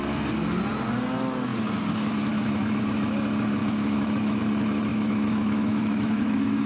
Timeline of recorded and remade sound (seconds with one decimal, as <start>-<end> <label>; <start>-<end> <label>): 0.0-3.6 recorded; 3.6-4.4 remade; 4.4-4.9 recorded; 4.9-6.7 remade